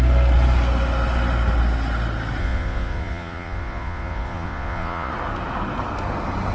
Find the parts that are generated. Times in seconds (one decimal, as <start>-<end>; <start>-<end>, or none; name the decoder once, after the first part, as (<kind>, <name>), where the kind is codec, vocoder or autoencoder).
2.4-5.1 (vocoder, Vocos)